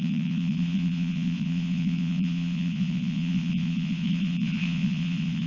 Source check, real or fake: fake